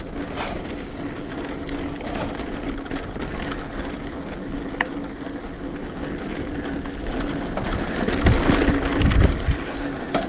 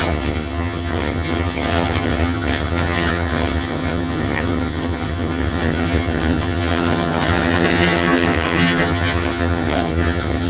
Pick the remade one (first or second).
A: second